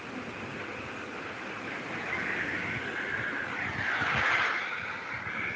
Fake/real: real